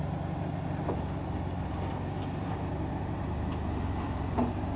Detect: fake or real real